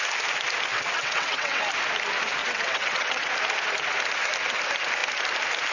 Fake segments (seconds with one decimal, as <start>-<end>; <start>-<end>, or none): 0.7-1.6; 2.4-3.3